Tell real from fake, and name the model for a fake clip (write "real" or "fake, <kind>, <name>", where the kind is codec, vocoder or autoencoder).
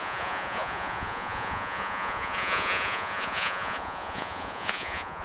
fake, vocoder, Vocos